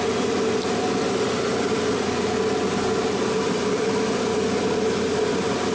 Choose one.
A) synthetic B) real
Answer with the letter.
B